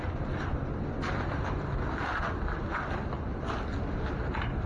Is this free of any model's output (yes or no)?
yes